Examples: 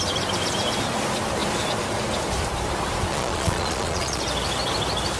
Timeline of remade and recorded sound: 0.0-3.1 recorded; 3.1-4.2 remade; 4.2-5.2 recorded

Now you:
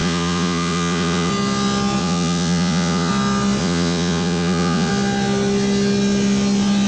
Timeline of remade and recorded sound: 0.0-1.3 remade; 1.3-2.0 recorded; 2.0-3.1 remade; 3.1-3.6 recorded; 3.6-4.9 remade; 4.9-6.9 recorded